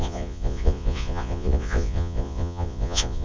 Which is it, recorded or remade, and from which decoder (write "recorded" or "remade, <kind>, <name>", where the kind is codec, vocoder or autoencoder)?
remade, vocoder, Vocos